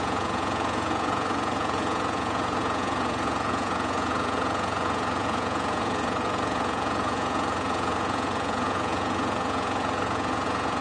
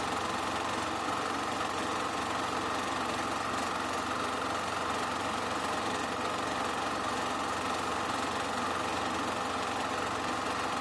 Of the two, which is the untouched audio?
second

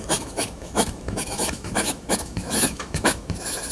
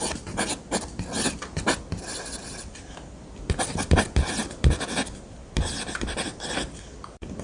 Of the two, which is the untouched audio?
second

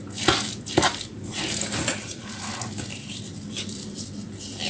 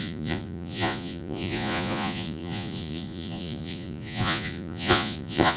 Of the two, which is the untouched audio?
first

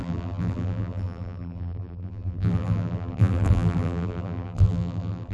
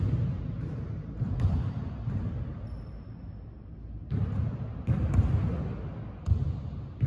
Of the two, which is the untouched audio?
second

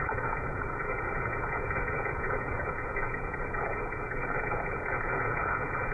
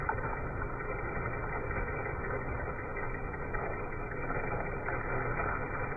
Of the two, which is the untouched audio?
second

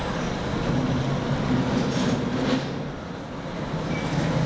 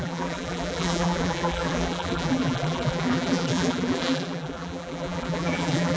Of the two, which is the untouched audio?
first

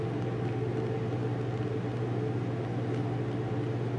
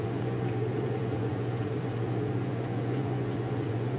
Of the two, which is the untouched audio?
first